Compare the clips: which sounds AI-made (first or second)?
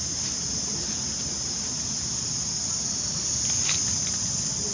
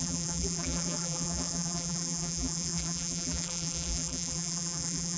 second